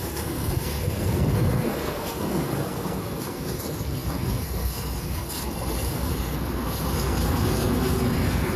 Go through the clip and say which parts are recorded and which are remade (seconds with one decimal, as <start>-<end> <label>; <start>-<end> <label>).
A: 0.0-8.6 remade